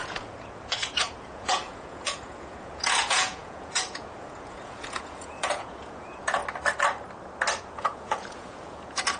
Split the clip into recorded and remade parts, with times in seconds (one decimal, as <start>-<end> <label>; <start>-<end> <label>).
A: 0.0-6.4 remade; 6.4-7.6 recorded; 7.6-9.2 remade